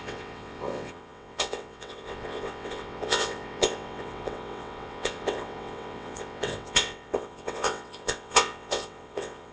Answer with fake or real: fake